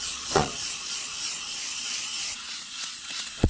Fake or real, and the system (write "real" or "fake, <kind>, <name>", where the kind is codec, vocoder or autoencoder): fake, vocoder, Vocos